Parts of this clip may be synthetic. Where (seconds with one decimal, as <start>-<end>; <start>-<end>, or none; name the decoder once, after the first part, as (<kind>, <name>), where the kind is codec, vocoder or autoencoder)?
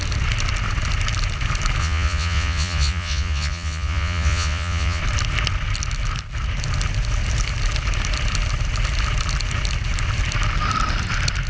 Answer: 1.8-5.0 (vocoder, Vocos)